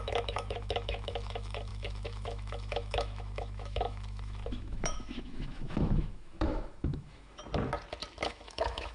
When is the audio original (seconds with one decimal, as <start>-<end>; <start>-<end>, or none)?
7.4-8.2

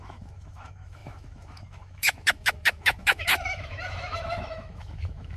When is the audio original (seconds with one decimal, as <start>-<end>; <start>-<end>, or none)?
none